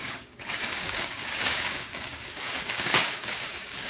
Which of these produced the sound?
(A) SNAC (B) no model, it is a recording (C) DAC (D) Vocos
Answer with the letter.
C